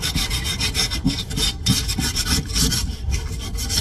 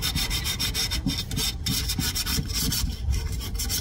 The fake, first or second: first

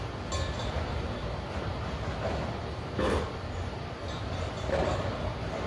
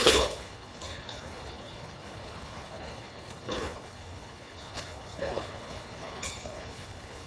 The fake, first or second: second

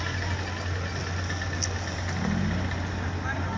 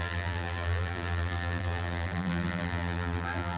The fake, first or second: second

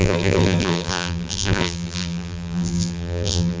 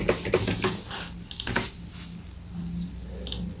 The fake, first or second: first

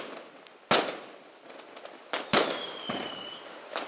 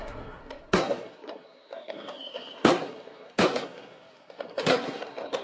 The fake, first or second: second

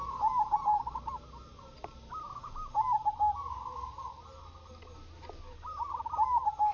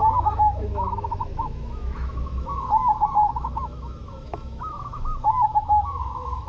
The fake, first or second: second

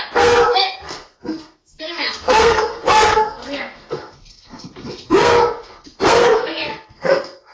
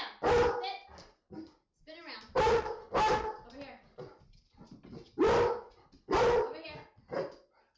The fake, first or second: first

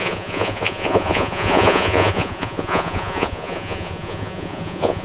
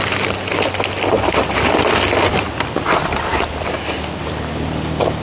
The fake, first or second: first